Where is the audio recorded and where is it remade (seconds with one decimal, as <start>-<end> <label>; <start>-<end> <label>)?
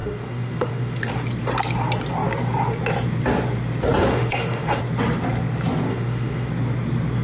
0.0-1.1 remade; 1.1-4.1 recorded; 4.1-4.8 remade; 4.8-5.9 recorded; 5.9-6.5 remade; 6.5-7.2 recorded